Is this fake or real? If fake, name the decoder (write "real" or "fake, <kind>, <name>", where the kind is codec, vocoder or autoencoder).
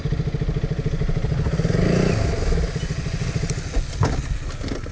real